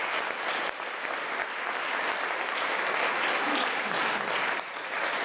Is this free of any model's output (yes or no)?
yes